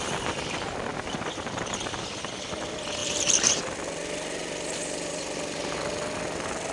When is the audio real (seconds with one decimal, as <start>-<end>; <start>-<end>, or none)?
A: 0.0-0.9; 2.3-3.0; 3.6-6.7